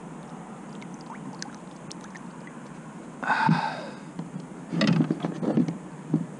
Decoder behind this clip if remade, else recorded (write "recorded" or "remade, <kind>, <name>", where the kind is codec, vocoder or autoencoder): recorded